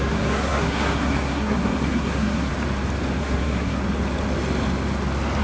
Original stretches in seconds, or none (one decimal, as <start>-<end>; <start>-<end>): 2.5-3.2; 3.8-5.4